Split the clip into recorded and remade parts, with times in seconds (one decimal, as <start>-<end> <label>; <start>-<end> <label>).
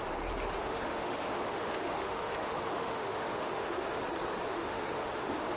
0.0-0.6 recorded; 0.6-4.0 remade; 4.0-4.5 recorded; 4.5-5.6 remade